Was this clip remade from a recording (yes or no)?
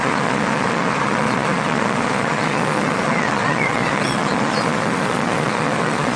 yes